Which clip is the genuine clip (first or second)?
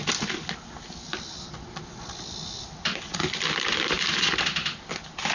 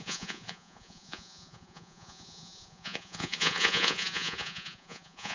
first